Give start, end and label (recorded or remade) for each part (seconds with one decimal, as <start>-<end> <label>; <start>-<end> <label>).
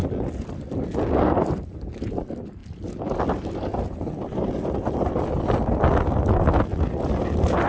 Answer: 0.0-7.7 recorded